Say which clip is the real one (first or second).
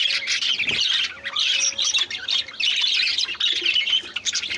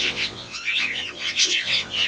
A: first